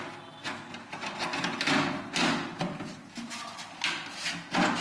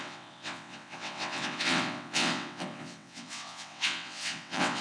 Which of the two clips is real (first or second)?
first